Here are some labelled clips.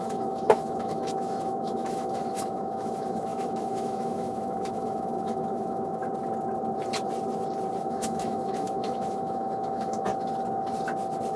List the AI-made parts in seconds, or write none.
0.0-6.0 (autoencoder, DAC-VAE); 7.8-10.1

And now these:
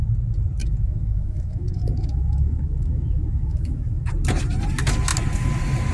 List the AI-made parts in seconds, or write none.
0.6-4.1 (autoencoder, DAC-VAE)

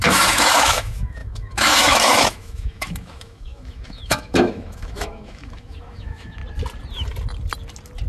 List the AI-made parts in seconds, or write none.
0.0-6.4 (autoencoder, DAC-VAE)

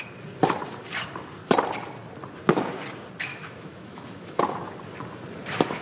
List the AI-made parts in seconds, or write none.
3.3-4.4 (autoencoder, DAC-VAE)

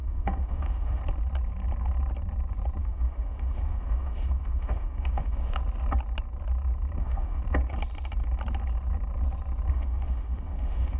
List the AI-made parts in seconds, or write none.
0.0-1.0 (autoencoder, DAC-VAE); 2.8-5.6; 7.0-7.4; 9.7-11.0

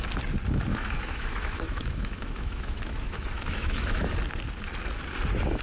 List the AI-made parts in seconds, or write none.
0.7-4.1 (autoencoder, DAC-VAE)